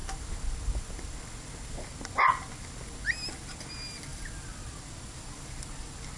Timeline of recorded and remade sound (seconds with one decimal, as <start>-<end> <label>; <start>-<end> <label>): 0.0-6.2 recorded